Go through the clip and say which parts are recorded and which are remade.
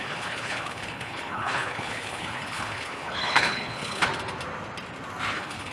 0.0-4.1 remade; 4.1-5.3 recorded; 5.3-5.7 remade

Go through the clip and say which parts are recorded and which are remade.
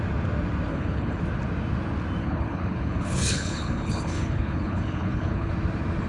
0.0-0.7 recorded; 0.7-1.2 remade; 1.2-2.2 recorded; 2.2-5.5 remade; 5.5-6.1 recorded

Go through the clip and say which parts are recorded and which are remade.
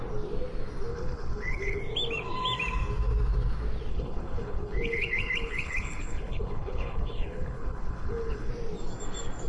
0.0-0.9 recorded; 0.9-1.8 remade; 1.8-3.9 recorded; 3.9-8.5 remade; 8.5-9.5 recorded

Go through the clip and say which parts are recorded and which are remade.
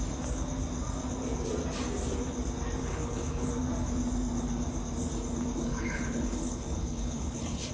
0.0-2.8 recorded; 2.8-3.5 remade; 3.5-5.7 recorded; 5.7-7.7 remade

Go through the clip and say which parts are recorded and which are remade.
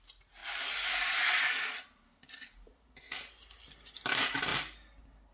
0.0-5.3 recorded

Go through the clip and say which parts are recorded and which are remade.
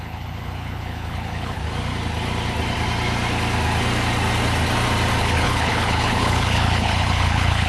0.0-1.6 remade; 1.6-5.2 recorded; 5.2-7.7 remade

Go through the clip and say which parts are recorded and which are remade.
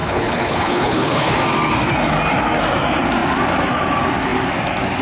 0.0-1.3 remade; 1.3-5.0 recorded